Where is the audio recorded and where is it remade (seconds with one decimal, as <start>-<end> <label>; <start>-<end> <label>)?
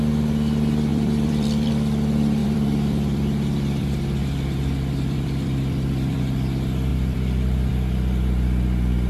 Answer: 0.0-0.9 recorded; 0.9-1.7 remade; 1.7-2.4 recorded; 2.4-6.2 remade; 6.2-6.9 recorded; 6.9-7.7 remade; 7.7-9.1 recorded